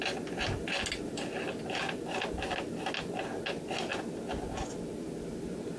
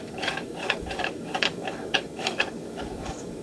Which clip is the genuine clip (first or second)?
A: first